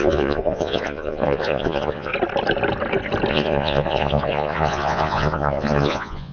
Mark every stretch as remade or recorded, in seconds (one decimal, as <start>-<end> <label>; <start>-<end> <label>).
0.0-2.1 remade; 2.1-3.3 recorded; 3.3-6.3 remade